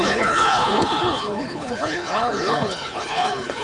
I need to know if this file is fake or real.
fake